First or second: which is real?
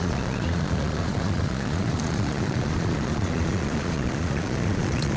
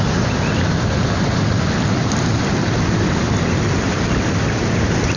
second